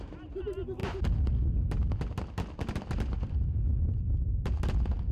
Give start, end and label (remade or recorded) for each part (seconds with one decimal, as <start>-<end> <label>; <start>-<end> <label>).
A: 0.0-5.1 recorded